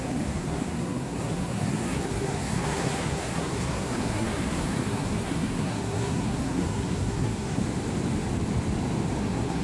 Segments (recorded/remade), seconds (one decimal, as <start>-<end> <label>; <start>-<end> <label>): 0.0-7.6 remade; 7.6-9.2 recorded; 9.2-9.6 remade